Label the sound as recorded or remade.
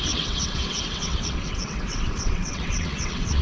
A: remade